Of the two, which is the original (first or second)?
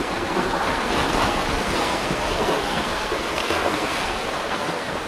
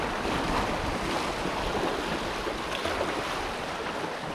second